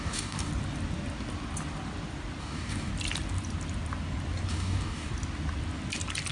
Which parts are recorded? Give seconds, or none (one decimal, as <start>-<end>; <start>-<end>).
0.5-2.4; 2.9-4.5; 5.1-6.3